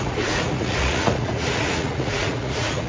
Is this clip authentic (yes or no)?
no